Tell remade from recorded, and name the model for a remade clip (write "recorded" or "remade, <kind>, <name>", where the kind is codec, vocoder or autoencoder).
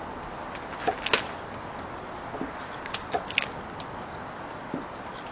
recorded